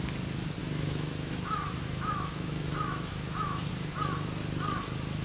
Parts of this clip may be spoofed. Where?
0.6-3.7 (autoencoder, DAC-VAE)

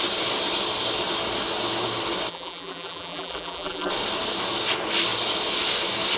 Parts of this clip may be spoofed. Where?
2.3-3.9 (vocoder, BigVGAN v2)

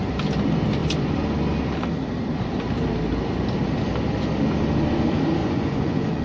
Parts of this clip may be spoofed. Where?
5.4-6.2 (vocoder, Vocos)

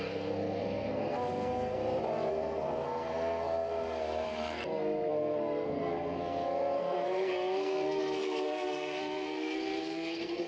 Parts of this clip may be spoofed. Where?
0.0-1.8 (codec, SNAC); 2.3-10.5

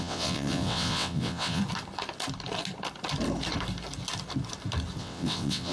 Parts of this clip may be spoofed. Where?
0.0-1.6 (vocoder, WaveNeXt); 5.0-5.7

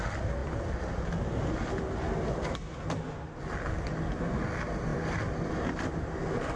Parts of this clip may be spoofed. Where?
none

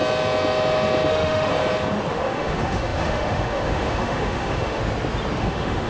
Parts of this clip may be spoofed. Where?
1.1-1.5 (autoencoder, DAC-VAE); 2.1-4.8; 5.4-5.9

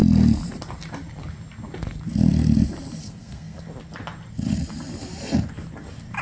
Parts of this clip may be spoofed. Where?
3.0-3.6 (codec, SNAC)